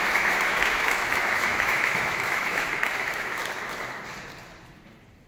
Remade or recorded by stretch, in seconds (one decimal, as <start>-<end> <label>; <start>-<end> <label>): 0.0-3.4 remade; 3.4-5.3 recorded